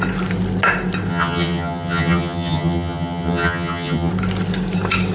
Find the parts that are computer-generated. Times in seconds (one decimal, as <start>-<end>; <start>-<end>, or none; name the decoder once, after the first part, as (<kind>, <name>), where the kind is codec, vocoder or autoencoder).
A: 1.1-4.1 (vocoder, HiFi-GAN)